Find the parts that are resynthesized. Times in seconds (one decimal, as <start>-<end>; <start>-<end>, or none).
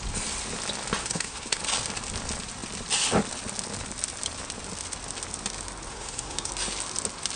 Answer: 1.0-1.6; 5.9-6.5